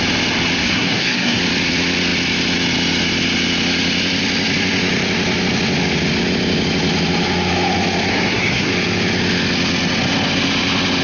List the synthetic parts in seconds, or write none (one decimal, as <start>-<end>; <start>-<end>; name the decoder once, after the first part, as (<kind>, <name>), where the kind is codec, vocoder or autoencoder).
0.6-1.4 (codec, SNAC); 8.1-8.7